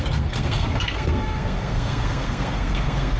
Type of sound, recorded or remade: remade